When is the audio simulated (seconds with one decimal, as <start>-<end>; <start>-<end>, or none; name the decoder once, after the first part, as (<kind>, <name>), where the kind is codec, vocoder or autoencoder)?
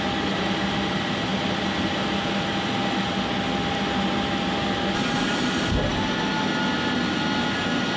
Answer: none